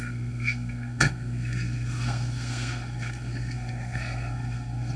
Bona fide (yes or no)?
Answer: no